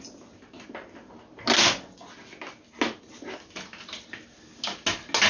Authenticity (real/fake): real